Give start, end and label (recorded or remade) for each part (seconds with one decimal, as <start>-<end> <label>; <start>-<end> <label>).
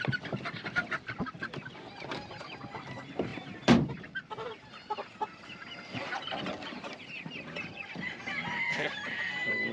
0.0-3.3 remade; 3.3-7.9 recorded; 7.9-9.7 remade